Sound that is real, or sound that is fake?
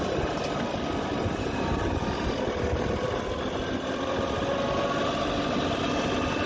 real